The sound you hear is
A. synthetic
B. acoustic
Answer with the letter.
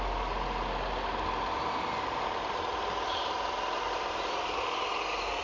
B